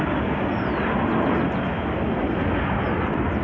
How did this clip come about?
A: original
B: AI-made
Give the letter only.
A